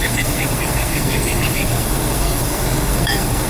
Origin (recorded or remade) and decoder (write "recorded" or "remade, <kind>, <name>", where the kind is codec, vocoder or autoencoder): remade, codec, SNAC